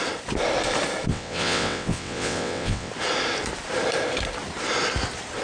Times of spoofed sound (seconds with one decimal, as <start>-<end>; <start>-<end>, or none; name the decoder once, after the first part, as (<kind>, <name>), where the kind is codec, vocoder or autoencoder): 1.1-2.9 (vocoder, WaveNeXt)